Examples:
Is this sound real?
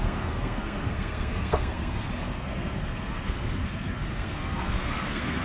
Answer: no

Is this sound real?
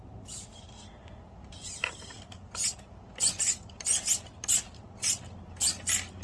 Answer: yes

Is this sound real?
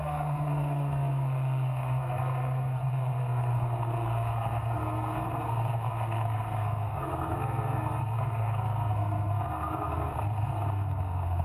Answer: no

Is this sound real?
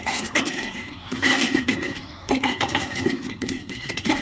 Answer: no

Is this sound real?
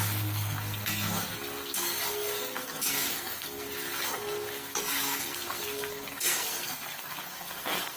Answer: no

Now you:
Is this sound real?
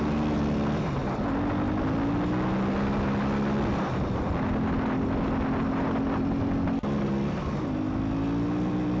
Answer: yes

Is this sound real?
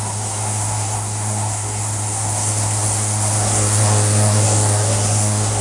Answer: no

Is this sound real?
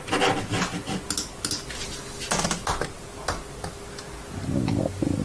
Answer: yes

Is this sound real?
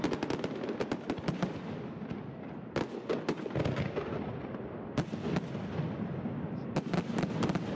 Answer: yes